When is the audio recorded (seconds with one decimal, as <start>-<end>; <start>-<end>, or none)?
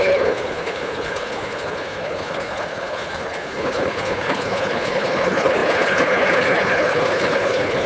none